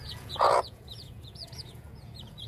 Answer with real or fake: fake